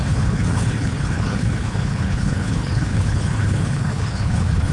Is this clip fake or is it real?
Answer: fake